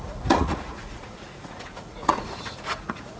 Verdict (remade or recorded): remade